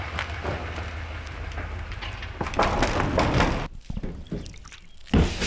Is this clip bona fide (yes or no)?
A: yes